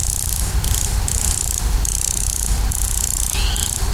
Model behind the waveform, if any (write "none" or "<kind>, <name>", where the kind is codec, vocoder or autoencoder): none